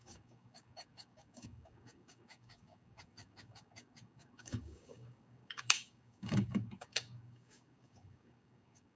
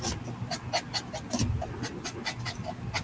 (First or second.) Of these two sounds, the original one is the second